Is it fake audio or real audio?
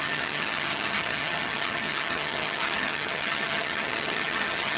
fake